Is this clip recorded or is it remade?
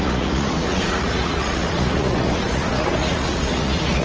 remade